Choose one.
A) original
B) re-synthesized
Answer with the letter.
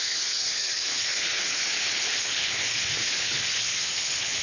B